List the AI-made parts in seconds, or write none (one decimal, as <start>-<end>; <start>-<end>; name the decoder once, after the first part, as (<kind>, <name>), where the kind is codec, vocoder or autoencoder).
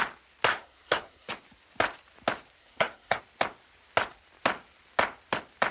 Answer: 0.5-1.3 (codec, SNAC); 2.6-3.2